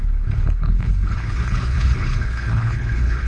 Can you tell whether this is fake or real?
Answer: fake